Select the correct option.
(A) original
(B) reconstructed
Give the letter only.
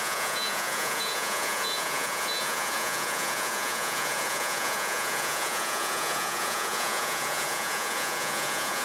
B